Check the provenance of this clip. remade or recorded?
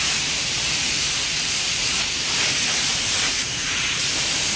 remade